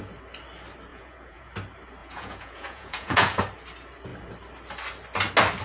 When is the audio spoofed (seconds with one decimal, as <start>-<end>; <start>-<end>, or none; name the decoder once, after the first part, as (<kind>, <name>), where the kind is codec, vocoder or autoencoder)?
0.9-1.5 (vocoder, Vocos); 2.0-3.4